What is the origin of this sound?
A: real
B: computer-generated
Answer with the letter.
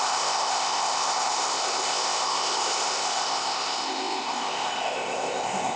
B